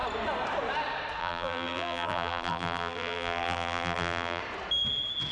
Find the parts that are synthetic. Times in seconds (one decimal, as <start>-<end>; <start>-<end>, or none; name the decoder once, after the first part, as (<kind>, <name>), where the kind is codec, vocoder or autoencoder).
1.2-4.4 (vocoder, BigVGAN v2)